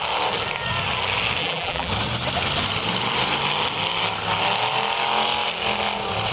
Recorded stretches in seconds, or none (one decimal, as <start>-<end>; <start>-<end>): 0.0-1.4; 1.9-6.3